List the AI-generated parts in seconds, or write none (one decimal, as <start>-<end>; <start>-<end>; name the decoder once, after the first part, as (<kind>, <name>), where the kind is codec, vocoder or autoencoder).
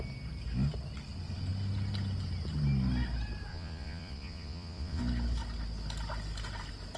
3.5-5.0 (vocoder, Vocos)